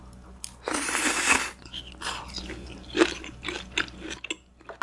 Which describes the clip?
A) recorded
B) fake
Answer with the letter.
A